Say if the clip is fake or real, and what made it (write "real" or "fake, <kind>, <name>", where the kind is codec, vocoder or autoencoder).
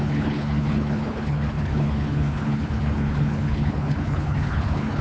fake, codec, HILCodec